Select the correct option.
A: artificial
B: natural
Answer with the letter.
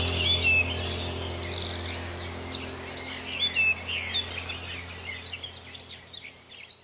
B